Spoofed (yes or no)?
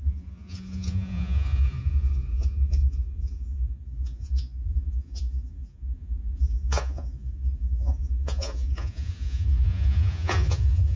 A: yes